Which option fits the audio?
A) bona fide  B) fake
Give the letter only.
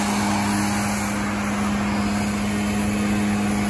A